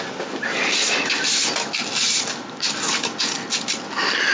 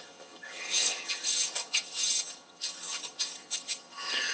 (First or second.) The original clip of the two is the first